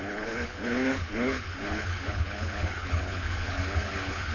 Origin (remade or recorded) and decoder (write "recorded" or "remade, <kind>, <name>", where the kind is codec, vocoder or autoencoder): remade, codec, HILCodec